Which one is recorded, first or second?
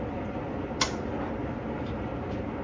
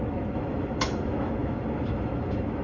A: first